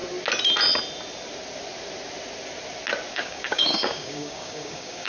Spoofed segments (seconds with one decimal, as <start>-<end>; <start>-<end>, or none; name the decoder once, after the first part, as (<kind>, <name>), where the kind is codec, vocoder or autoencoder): 3.1-5.1 (codec, DAC)